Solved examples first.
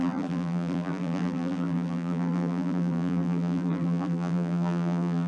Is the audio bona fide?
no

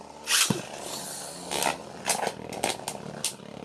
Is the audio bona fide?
yes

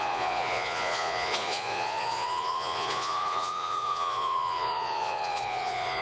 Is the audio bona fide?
no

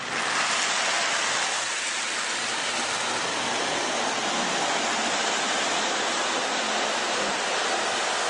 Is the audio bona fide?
yes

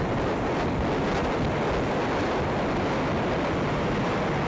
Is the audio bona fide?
yes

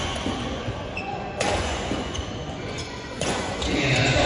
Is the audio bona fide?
no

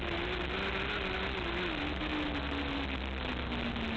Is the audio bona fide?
yes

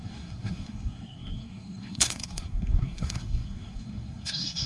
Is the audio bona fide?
no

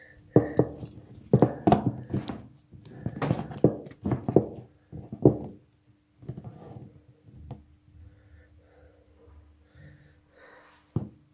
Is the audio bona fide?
yes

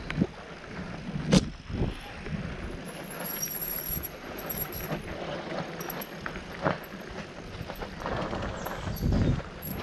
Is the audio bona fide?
yes